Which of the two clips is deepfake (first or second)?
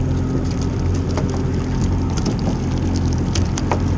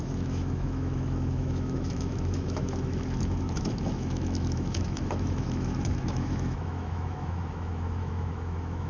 second